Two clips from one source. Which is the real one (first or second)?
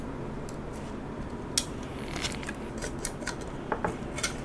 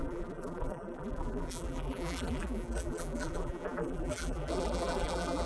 first